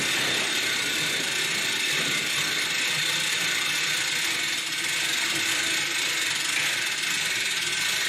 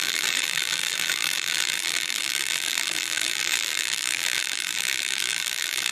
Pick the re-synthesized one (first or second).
second